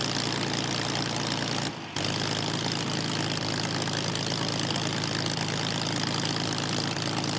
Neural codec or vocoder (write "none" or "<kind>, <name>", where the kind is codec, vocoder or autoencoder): none